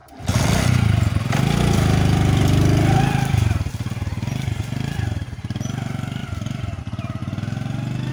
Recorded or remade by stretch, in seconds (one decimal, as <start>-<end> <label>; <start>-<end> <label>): 0.0-3.7 remade; 3.7-6.2 recorded; 6.2-6.8 remade; 6.8-8.1 recorded